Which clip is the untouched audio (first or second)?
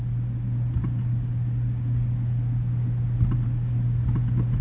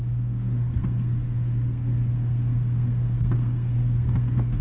first